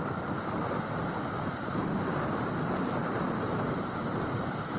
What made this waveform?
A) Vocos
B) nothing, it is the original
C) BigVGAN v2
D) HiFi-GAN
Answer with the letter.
C